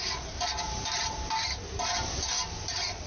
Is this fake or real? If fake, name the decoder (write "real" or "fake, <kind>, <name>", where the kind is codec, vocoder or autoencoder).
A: fake, vocoder, BigVGAN v2